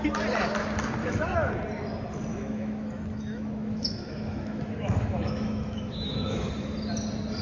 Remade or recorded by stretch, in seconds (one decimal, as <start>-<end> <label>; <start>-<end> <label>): 0.0-1.0 recorded; 1.0-1.5 remade; 1.5-2.3 recorded; 2.3-6.5 remade; 6.5-7.4 recorded